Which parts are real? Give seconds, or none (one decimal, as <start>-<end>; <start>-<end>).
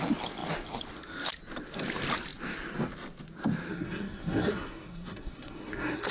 0.0-3.7